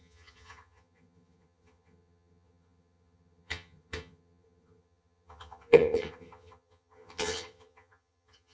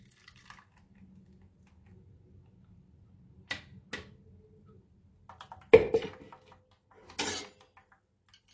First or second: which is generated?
first